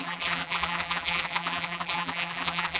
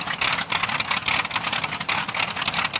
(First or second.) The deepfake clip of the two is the first